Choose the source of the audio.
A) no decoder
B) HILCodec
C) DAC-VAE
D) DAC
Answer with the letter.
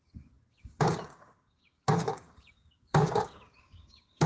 D